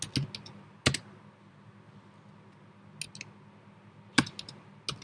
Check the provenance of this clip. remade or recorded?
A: recorded